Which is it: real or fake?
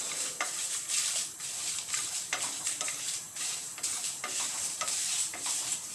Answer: fake